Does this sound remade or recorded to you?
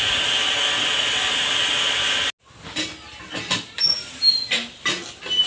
recorded